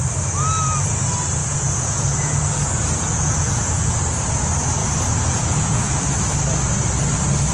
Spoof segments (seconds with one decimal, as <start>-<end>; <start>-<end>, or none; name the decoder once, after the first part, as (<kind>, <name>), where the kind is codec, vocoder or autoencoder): 1.4-3.9 (vocoder, Vocos); 4.8-6.0